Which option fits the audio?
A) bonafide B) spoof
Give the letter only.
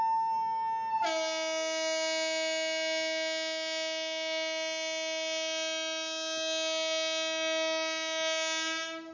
A